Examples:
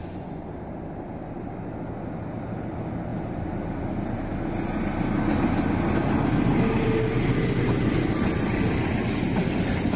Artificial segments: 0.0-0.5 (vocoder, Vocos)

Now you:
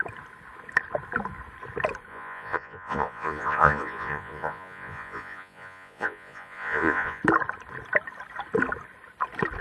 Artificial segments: 2.1-7.2 (vocoder, Vocos)

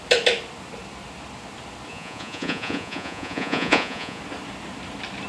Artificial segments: 1.9-4.2 (vocoder, Vocos)

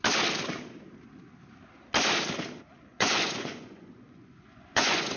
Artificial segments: 2.9-5.2 (vocoder, Vocos)

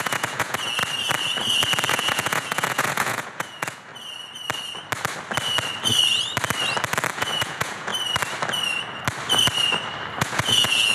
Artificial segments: 0.0-0.8 (vocoder, Vocos); 1.9-3.9; 7.1-7.9; 10.2-10.9

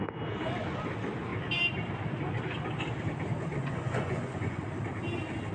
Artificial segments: 3.5-4.6 (vocoder, Vocos)

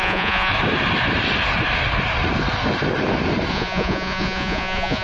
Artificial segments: 0.0-0.5 (vocoder, Vocos); 3.5-5.0

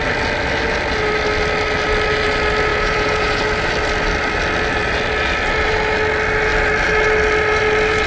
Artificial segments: 2.7-3.4 (vocoder, Vocos)